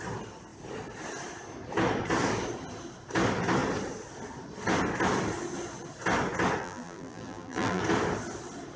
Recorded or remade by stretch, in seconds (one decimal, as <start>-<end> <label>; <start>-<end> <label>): 0.0-6.6 recorded; 6.6-7.8 remade; 7.8-8.8 recorded